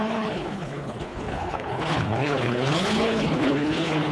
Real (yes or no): no